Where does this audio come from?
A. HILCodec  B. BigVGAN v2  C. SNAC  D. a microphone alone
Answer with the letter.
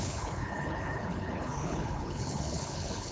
A